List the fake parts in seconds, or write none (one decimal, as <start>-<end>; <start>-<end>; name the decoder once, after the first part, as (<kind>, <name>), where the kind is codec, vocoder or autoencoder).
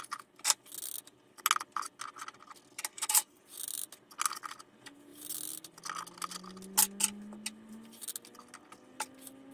2.9-3.4 (codec, SNAC)